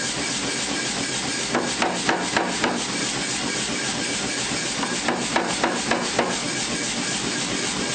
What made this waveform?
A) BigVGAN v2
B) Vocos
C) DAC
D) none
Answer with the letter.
D